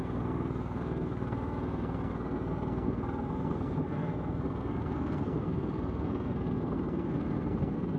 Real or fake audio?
fake